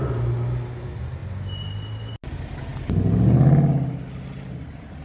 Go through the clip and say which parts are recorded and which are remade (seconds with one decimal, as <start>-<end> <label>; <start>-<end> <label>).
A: 0.0-5.0 recorded